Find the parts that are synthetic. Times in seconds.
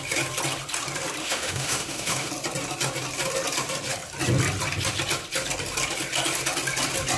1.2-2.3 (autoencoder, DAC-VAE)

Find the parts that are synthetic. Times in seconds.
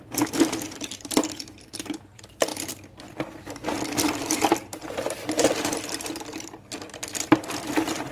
none